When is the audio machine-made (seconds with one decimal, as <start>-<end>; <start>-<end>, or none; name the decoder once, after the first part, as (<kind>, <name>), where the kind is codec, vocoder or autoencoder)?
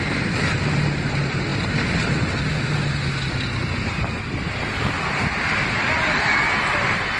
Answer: none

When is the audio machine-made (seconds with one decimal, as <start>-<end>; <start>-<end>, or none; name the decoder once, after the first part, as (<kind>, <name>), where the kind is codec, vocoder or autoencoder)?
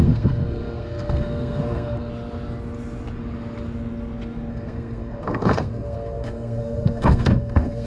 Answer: 0.0-2.1 (codec, SNAC); 4.5-7.9